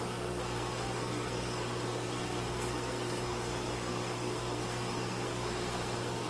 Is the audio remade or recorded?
remade